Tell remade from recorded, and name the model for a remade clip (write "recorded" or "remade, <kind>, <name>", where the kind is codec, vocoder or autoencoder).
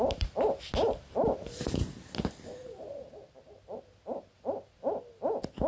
recorded